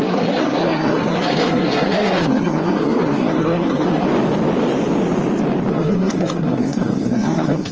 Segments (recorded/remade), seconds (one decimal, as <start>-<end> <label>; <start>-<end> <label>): 0.0-4.1 remade; 4.1-5.7 recorded; 5.7-7.7 remade